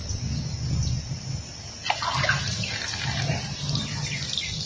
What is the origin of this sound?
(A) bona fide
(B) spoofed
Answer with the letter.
A